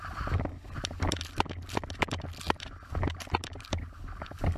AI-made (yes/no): no